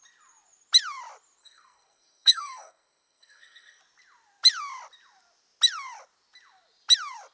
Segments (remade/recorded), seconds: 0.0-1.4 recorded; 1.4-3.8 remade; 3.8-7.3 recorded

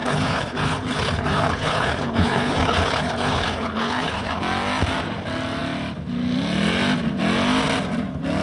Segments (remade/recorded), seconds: 0.0-4.4 remade; 4.4-8.4 recorded

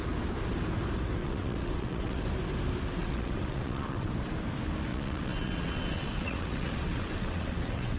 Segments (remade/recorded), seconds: 0.0-1.2 recorded; 1.2-2.2 remade; 2.2-3.0 recorded; 3.0-4.1 remade; 4.1-4.9 recorded; 4.9-8.0 remade